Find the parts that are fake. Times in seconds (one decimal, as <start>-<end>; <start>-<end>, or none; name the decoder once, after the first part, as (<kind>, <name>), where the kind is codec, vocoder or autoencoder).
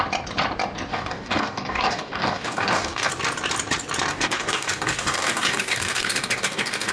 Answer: 0.9-3.1 (codec, DAC); 4.1-6.9